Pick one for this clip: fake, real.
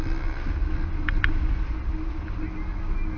real